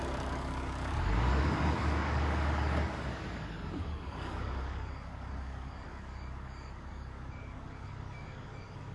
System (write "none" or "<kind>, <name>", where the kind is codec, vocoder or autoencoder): codec, DAC